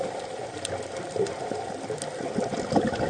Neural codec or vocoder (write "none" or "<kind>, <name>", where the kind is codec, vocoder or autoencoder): none